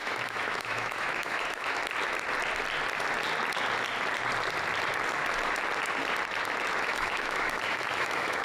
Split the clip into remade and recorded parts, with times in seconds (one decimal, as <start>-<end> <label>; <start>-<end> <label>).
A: 0.0-1.8 remade; 1.8-6.8 recorded; 6.8-8.4 remade